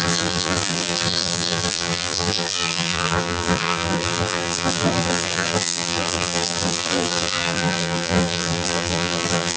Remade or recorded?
remade